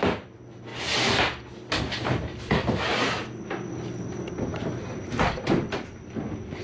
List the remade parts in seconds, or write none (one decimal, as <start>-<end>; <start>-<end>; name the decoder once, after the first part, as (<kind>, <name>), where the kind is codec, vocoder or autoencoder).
none

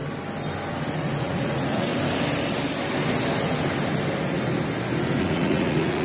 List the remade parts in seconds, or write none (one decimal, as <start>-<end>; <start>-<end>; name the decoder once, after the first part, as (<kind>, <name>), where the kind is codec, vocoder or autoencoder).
0.7-1.9 (vocoder, Vocos); 5.2-6.0

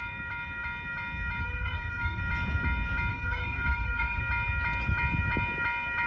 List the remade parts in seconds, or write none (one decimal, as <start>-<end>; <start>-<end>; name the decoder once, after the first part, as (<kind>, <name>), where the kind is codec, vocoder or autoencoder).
1.4-2.2 (codec, SNAC); 3.1-4.2

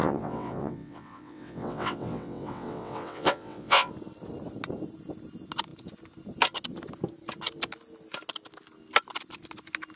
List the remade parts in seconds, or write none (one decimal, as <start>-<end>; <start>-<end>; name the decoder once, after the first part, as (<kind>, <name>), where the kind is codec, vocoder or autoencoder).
0.0-3.9 (vocoder, WaveNeXt)

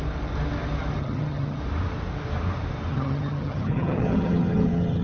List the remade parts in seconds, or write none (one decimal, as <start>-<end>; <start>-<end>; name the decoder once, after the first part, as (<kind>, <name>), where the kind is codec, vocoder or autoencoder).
1.0-1.6 (vocoder, HiFi-GAN); 2.9-5.0

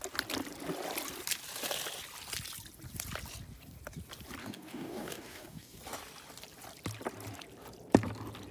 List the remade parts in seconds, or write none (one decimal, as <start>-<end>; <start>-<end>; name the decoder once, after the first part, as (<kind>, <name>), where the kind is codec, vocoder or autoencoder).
4.4-5.8 (codec, DAC)

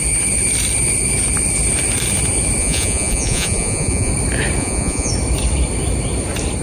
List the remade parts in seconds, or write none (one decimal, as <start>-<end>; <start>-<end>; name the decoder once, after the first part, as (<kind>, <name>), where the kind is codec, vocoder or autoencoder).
2.6-4.1 (vocoder, Vocos); 4.6-5.1